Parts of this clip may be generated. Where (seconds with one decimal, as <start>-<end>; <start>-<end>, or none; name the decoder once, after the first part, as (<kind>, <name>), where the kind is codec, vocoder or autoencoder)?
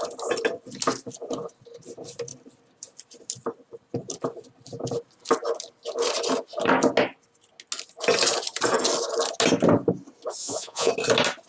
10.4-10.9 (vocoder, Vocos)